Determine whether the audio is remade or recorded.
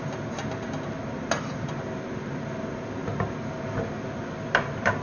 recorded